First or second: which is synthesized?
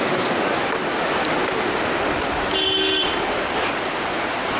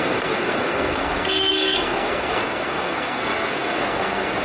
second